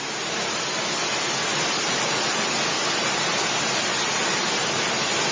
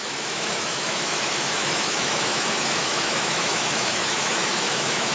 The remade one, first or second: second